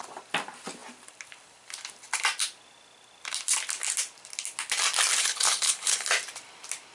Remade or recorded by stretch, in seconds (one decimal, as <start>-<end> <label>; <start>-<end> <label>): 0.0-5.2 recorded; 5.2-6.1 remade; 6.1-6.9 recorded